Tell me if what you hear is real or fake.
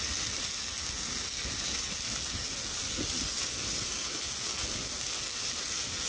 real